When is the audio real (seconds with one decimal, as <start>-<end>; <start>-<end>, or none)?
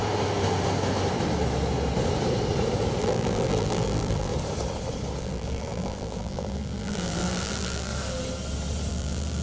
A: 0.0-3.0; 4.3-5.2; 7.9-8.9